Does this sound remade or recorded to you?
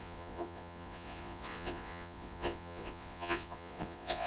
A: remade